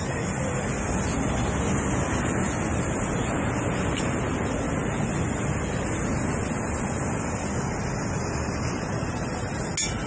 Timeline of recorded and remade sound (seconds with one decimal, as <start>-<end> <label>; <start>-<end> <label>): 0.0-10.1 recorded

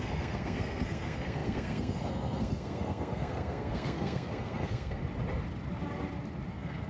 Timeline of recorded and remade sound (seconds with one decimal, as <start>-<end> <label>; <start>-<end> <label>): 0.0-5.0 remade; 5.0-6.5 recorded; 6.5-6.9 remade